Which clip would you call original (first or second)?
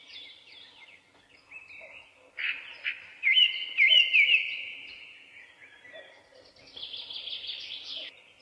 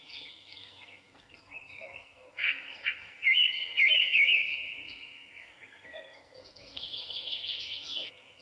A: first